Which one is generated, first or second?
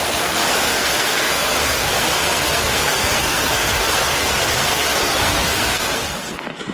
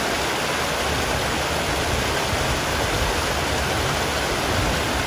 first